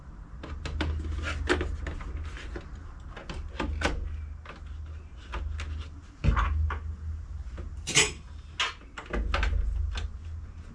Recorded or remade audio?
recorded